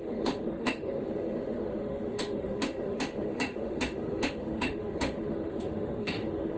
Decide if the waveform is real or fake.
fake